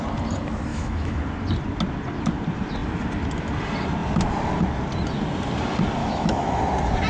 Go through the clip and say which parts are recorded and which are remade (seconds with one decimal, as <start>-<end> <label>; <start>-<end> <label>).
0.0-0.7 recorded; 0.7-1.2 remade; 1.2-6.0 recorded; 6.0-6.6 remade; 6.6-7.1 recorded